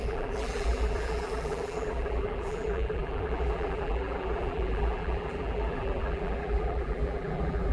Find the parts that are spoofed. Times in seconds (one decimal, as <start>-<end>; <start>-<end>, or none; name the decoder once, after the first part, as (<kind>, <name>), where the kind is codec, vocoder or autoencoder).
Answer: 0.0-7.7 (vocoder, BigVGAN v2)